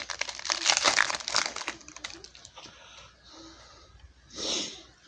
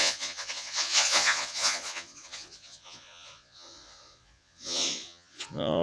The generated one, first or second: second